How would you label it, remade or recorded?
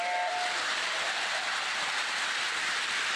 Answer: recorded